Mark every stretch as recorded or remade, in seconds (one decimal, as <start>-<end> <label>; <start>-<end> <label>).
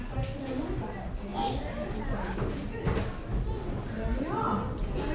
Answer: 0.0-5.1 recorded